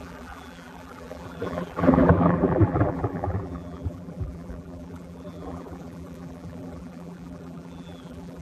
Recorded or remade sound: remade